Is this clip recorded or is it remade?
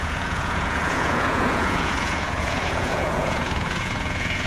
remade